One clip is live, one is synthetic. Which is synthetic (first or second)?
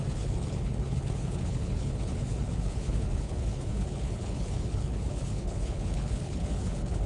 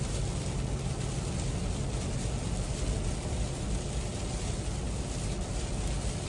first